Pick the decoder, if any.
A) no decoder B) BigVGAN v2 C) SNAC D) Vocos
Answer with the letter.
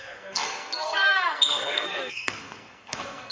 C